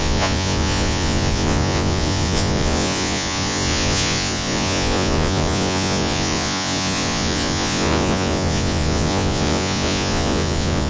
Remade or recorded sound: remade